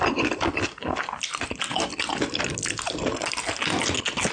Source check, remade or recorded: recorded